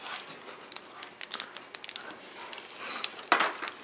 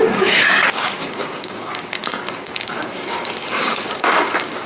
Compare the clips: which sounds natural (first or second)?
first